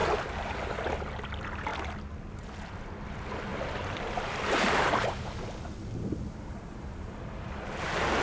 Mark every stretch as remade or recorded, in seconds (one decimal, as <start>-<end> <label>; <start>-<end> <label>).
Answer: 0.0-0.5 remade; 0.5-3.5 recorded; 3.5-8.2 remade